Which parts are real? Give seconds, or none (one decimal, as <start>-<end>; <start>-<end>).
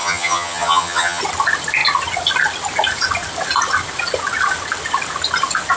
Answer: 1.2-5.8